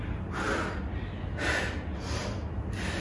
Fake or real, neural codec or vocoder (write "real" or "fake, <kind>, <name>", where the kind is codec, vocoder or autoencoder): real